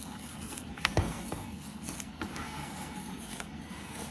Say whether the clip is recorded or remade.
remade